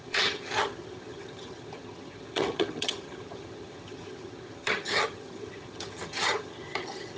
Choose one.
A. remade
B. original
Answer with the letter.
A